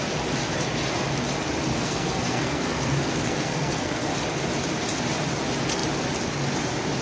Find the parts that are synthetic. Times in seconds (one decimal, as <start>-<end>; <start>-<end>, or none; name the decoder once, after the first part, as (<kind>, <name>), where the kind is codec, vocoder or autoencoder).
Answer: 1.7-4.1 (codec, SNAC)